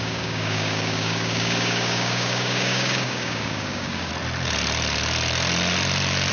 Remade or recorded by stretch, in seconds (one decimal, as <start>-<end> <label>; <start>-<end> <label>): 0.0-4.1 remade; 4.1-6.3 recorded